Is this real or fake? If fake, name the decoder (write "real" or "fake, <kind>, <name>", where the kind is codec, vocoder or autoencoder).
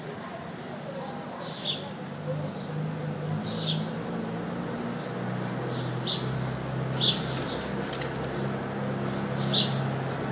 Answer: real